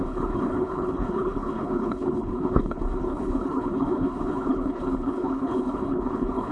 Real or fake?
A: fake